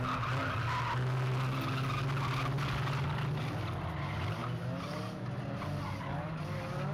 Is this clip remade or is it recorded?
recorded